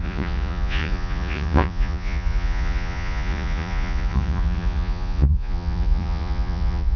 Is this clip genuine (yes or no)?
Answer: no